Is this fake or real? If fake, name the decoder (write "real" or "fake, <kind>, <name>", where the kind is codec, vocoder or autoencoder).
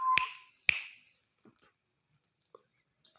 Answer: real